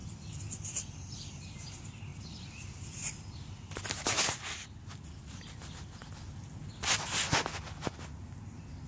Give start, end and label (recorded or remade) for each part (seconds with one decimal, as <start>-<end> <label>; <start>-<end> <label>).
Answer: 0.0-8.9 recorded